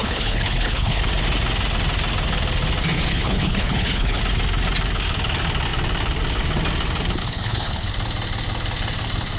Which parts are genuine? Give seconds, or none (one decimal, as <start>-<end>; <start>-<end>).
1.0-3.1; 4.2-7.2; 7.9-9.4